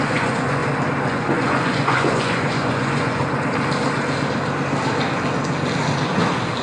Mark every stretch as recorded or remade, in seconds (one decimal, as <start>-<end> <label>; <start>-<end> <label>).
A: 0.0-0.6 remade; 0.6-1.1 recorded; 1.1-3.2 remade; 3.2-6.6 recorded